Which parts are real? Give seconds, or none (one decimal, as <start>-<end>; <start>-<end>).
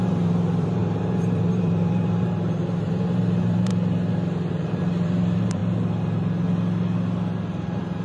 3.7-4.5; 5.6-7.5